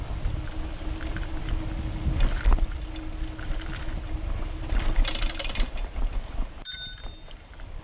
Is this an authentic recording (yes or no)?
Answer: yes